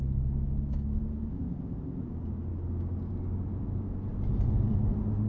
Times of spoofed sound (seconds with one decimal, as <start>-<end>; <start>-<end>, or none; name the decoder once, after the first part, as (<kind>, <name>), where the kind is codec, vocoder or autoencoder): 1.3-2.0 (codec, ZipCodec)